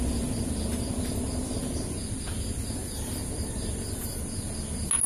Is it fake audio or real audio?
real